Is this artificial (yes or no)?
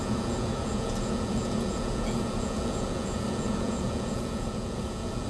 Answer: yes